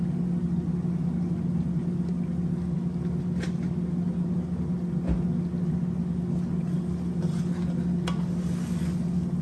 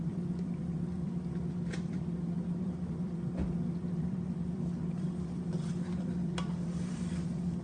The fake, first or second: second